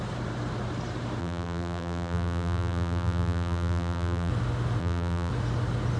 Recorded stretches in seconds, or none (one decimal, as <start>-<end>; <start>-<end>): 0.0-1.2; 4.3-4.8; 5.3-6.0